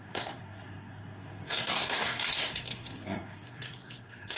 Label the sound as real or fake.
fake